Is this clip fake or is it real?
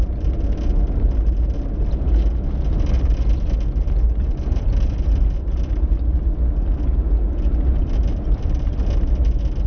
real